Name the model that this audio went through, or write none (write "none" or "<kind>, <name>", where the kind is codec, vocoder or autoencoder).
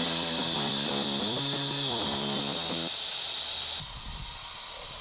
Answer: vocoder, BigVGAN v2